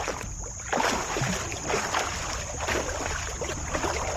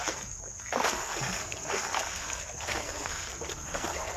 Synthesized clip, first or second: second